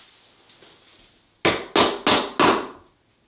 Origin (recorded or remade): recorded